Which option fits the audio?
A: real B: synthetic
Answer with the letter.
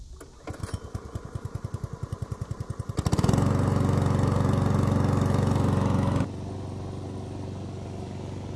A